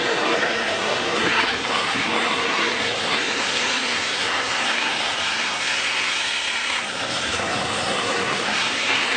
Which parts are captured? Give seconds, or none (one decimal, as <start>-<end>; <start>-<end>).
none